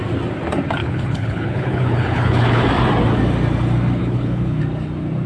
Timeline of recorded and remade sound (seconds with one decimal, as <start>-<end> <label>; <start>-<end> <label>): 0.0-0.8 recorded; 0.8-2.6 remade; 2.6-4.0 recorded; 4.0-4.6 remade; 4.6-5.3 recorded